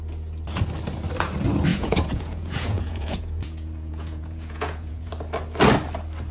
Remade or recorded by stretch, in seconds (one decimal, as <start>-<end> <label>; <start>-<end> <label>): 0.0-1.7 recorded; 1.7-5.1 remade; 5.1-6.3 recorded